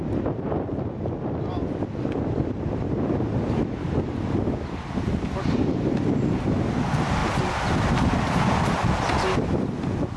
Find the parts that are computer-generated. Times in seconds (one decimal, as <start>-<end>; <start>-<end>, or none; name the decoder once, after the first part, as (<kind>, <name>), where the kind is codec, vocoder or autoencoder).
none